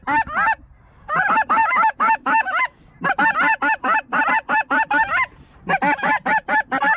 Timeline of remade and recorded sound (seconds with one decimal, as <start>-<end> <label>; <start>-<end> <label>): 0.0-1.6 recorded; 1.6-2.8 remade; 2.8-7.0 recorded